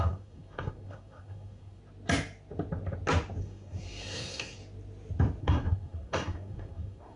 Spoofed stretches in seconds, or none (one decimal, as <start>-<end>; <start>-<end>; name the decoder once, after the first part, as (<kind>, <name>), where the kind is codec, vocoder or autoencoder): 0.0-1.8 (codec, SNAC); 3.4-4.6; 5.4-7.2